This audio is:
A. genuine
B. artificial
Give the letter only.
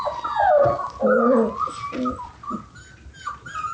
A